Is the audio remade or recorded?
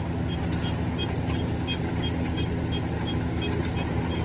recorded